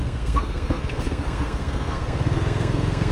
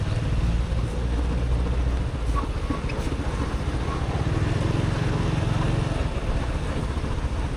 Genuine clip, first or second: second